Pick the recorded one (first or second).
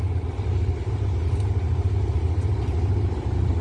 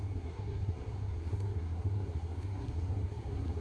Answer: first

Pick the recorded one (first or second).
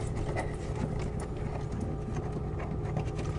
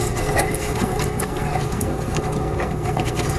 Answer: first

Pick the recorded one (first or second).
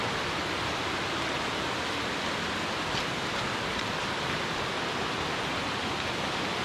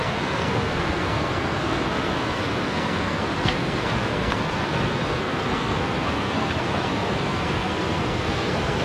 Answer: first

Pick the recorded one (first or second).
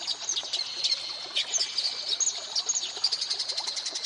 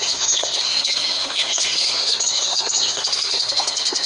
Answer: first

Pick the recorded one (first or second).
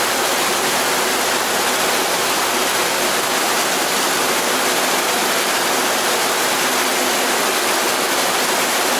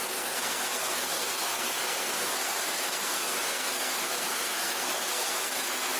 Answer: first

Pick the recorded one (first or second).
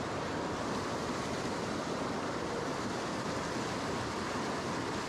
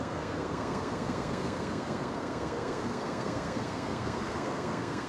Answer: first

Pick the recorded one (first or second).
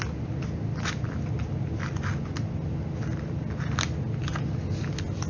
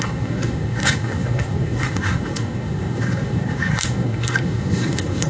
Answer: first